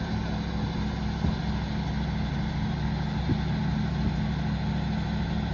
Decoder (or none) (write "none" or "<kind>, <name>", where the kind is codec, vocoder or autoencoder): none